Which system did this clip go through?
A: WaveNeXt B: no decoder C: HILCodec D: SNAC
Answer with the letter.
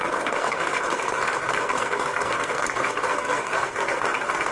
D